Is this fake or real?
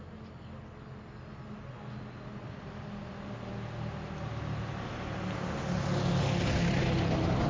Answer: real